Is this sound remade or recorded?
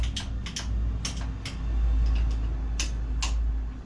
recorded